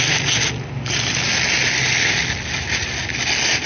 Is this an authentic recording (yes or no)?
yes